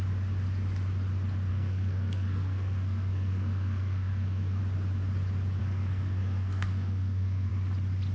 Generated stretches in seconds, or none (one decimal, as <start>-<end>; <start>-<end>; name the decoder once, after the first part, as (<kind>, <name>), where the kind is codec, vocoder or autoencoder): 1.5-4.6 (codec, SNAC); 5.6-7.5